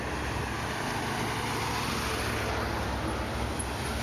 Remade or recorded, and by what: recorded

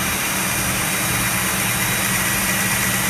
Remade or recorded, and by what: recorded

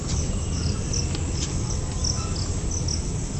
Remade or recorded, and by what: recorded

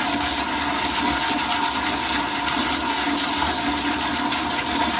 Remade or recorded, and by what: recorded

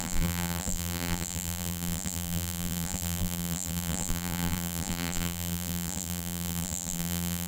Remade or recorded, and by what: remade, vocoder, BigVGAN v2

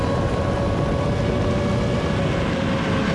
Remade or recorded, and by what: recorded